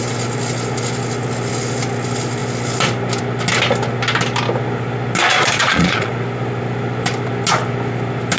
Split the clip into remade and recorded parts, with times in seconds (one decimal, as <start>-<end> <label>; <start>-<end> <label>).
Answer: 0.0-5.3 recorded; 5.3-6.1 remade; 6.1-8.4 recorded